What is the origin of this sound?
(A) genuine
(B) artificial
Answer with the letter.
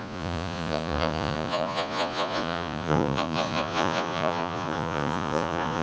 B